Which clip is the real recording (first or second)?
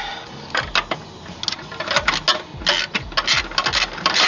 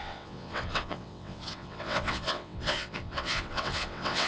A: first